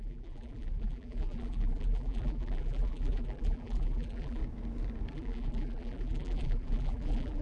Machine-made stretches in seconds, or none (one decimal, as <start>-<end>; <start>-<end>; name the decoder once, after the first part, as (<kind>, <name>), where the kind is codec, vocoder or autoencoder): 0.0-4.4 (vocoder, BigVGAN v2); 5.1-7.4